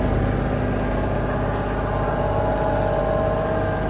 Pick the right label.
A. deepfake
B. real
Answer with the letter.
B